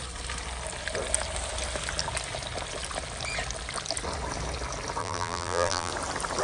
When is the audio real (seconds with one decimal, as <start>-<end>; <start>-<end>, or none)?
0.0-5.0; 5.9-6.4